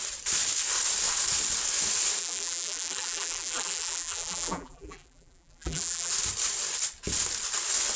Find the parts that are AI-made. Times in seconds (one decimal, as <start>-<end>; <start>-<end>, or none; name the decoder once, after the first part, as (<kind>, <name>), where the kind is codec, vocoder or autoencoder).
2.2-6.1 (vocoder, BigVGAN v2)